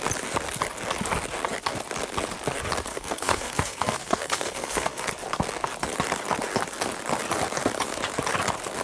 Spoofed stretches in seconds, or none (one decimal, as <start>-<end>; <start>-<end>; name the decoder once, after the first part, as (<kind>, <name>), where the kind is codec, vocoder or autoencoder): 2.9-5.1 (codec, SNAC)